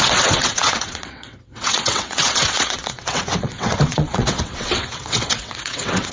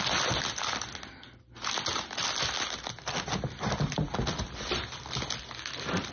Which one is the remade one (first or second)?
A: first